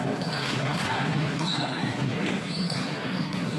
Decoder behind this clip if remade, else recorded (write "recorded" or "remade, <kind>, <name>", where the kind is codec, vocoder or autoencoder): remade, codec, SNAC